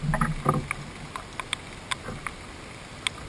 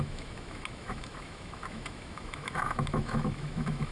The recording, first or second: first